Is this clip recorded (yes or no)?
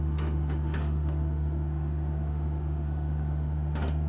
no